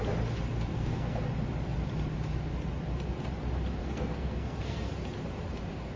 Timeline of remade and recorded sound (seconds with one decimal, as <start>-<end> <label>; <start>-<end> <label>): 0.0-0.7 recorded; 0.7-1.2 remade; 1.2-3.8 recorded; 3.8-4.9 remade; 4.9-6.0 recorded